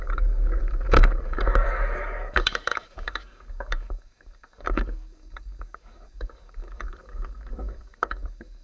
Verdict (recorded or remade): remade